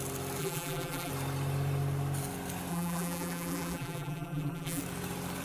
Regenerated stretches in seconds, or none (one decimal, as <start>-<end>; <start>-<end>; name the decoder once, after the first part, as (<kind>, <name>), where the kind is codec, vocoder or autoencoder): 0.4-1.1 (vocoder, BigVGAN v2); 2.7-4.8